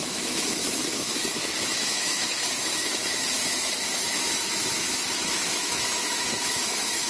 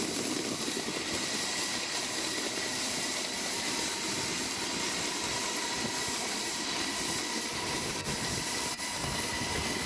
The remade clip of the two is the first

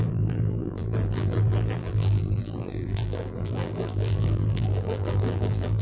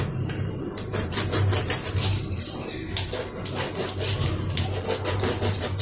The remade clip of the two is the first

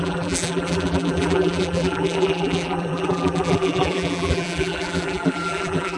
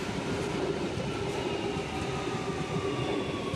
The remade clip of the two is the first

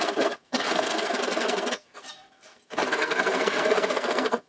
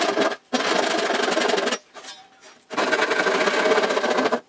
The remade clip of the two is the first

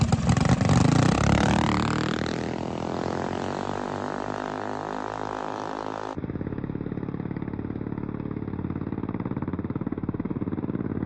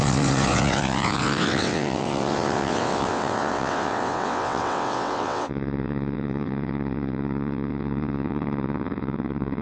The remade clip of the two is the second